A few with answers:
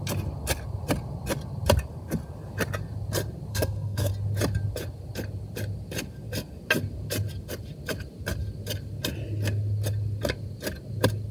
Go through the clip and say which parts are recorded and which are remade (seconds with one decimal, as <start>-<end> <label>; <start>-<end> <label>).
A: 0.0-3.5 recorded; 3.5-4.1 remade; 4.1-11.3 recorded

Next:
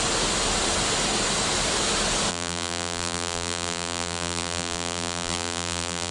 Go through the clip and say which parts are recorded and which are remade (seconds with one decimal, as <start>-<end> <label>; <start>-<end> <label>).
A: 0.0-2.3 recorded; 2.3-6.1 remade

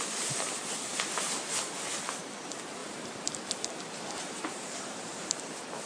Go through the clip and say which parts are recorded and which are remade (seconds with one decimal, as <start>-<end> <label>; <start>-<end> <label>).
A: 0.0-2.8 recorded; 2.8-5.3 remade; 5.3-5.9 recorded

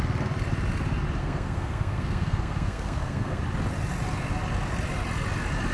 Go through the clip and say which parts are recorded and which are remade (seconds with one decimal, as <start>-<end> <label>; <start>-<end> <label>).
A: 0.0-1.2 recorded; 1.2-3.4 remade; 3.4-5.7 recorded

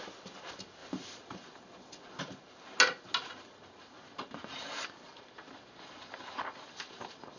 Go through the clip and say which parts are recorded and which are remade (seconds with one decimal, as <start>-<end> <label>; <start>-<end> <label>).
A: 0.0-7.4 recorded

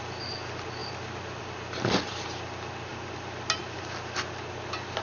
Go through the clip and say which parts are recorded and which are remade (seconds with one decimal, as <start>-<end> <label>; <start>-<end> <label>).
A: 0.0-5.0 recorded

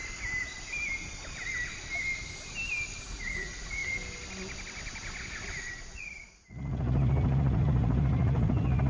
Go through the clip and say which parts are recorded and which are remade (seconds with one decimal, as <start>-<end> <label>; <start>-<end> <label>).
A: 0.0-3.0 recorded; 3.0-3.8 remade; 3.8-5.6 recorded; 5.6-8.9 remade

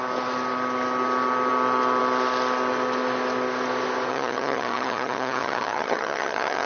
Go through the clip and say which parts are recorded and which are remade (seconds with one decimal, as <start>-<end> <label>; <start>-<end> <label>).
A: 0.0-4.1 recorded; 4.1-6.7 remade